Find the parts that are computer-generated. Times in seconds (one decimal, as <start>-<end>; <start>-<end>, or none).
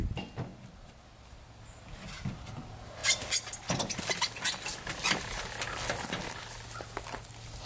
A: none